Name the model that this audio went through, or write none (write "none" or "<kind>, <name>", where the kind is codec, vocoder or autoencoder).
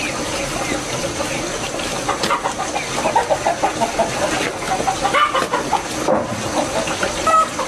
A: none